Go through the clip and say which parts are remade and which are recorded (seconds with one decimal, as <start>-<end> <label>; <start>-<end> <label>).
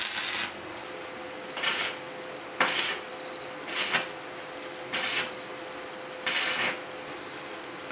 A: 0.0-7.9 recorded